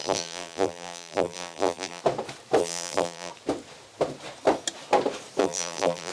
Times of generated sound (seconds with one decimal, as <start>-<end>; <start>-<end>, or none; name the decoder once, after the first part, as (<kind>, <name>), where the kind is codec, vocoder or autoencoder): 0.0-2.0 (vocoder, BigVGAN v2); 2.6-3.3; 5.4-6.1